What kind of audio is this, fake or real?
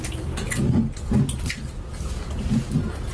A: real